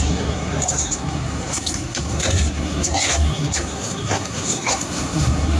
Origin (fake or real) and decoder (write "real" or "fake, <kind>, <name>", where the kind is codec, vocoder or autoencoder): fake, codec, SNAC